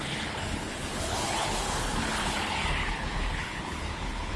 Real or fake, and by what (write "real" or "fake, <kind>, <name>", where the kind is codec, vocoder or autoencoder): fake, codec, HILCodec